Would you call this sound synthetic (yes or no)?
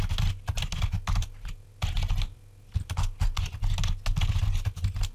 no